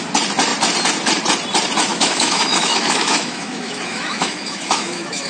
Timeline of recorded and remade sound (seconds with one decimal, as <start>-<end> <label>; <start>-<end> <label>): 0.0-1.9 recorded; 1.9-5.3 remade